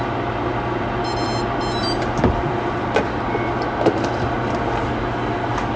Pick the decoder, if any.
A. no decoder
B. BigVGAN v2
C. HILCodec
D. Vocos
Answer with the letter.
A